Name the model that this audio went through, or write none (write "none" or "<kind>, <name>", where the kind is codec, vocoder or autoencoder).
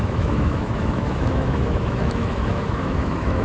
autoencoder, DAC-VAE